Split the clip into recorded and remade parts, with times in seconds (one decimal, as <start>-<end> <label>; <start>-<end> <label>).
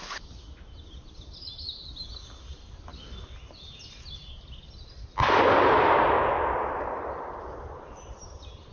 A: 0.0-8.7 recorded